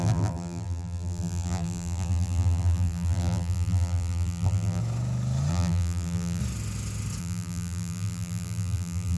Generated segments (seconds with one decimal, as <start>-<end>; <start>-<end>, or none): 0.0-4.8; 5.5-6.4; 7.2-9.2